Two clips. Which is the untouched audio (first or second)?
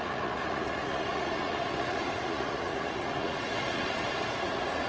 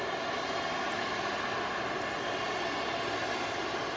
second